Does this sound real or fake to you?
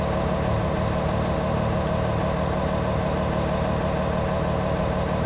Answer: real